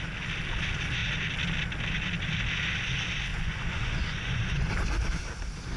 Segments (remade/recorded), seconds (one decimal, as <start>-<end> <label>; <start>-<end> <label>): 0.0-3.3 recorded; 3.3-4.7 remade; 4.7-5.8 recorded